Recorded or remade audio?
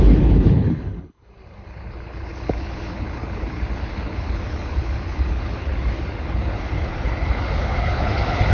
remade